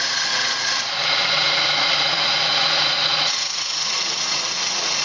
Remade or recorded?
remade